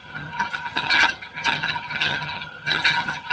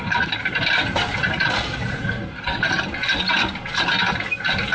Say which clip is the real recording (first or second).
second